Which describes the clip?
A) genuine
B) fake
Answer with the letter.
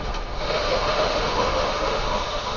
B